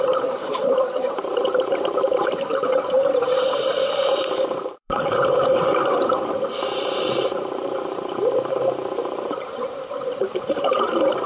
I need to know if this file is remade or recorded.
remade